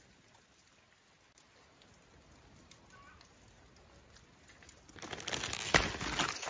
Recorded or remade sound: recorded